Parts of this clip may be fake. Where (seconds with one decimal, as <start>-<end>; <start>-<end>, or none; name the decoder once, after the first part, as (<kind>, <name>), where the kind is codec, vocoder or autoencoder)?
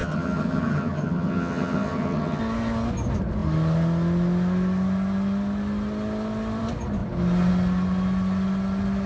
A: 0.0-2.4 (vocoder, HiFi-GAN)